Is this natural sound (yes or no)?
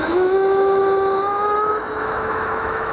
no